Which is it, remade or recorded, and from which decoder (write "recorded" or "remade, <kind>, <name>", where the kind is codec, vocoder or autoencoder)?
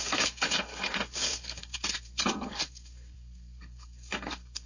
remade, codec, SNAC